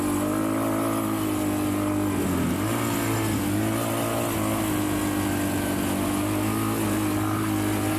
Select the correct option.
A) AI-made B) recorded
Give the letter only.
B